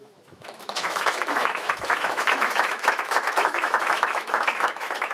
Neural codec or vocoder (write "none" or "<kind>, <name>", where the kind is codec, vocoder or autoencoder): autoencoder, DAC-VAE